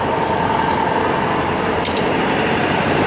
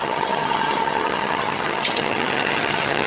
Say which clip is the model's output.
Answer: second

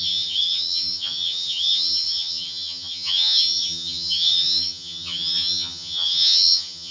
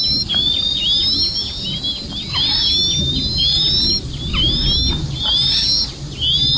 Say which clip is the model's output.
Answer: first